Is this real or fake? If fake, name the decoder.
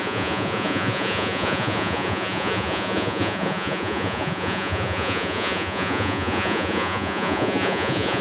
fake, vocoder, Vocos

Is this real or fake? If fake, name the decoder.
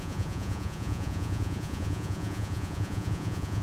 fake, vocoder, Vocos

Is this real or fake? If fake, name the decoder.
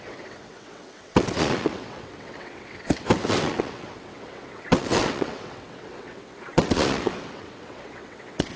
fake, vocoder, WaveNeXt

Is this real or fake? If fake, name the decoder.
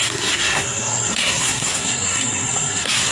fake, codec, SNAC